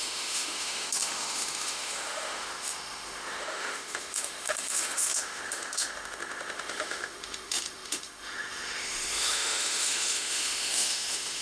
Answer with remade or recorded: remade